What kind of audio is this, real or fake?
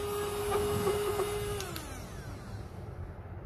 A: real